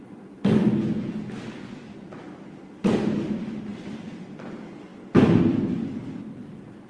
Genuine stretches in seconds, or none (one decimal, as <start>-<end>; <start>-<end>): 0.0-6.9